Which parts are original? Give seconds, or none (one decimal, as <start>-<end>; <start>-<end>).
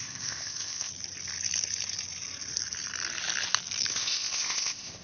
0.9-3.9